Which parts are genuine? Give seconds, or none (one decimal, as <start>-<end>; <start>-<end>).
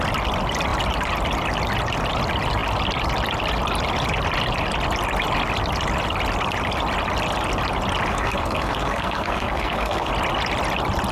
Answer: 0.0-8.1; 10.1-11.1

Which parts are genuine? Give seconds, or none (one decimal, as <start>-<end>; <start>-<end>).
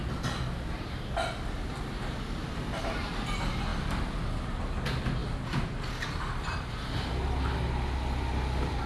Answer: 1.9-3.7; 4.6-8.9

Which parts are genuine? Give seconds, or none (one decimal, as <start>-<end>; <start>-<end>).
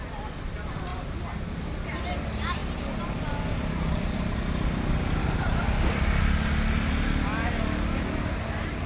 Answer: 0.0-8.9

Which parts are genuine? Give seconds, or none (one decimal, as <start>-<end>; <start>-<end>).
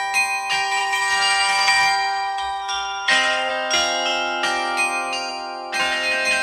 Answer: 0.0-0.8; 3.5-6.4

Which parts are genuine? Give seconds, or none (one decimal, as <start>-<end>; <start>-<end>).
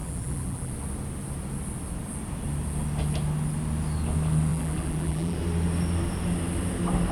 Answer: 0.7-4.5; 5.4-7.1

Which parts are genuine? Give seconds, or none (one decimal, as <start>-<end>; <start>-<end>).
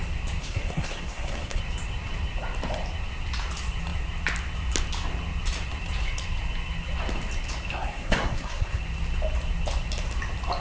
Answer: 0.0-0.4; 1.6-7.7; 8.8-10.6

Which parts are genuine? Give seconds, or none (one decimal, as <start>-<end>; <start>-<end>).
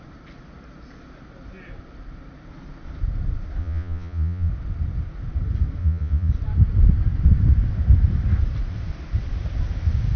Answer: 0.0-3.6; 4.5-5.8; 6.3-10.2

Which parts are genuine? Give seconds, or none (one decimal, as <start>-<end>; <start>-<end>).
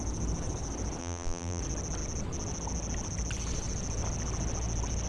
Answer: 0.0-1.0; 1.6-5.1